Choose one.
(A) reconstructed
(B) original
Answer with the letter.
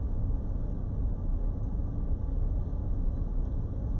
B